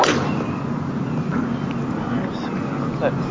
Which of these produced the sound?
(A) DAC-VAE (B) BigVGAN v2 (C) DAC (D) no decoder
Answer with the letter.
D